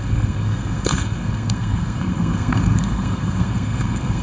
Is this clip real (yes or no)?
no